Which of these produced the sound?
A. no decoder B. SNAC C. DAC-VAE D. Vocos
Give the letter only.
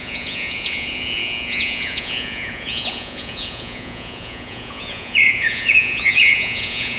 D